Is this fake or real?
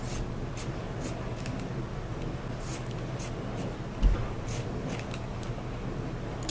real